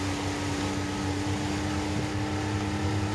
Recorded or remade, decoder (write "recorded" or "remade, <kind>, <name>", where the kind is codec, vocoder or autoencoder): recorded